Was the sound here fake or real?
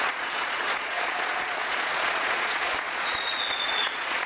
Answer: fake